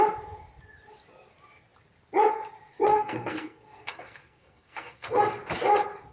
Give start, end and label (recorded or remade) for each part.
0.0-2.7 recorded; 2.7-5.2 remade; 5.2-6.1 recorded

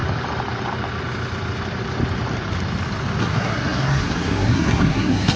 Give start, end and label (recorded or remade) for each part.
0.0-3.2 recorded; 3.2-5.4 remade

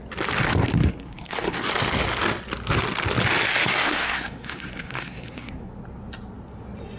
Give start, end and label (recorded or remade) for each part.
0.0-0.8 recorded; 0.8-1.7 remade; 1.7-3.6 recorded; 3.6-5.7 remade; 5.7-7.0 recorded